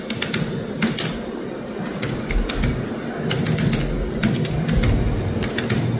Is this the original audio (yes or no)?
yes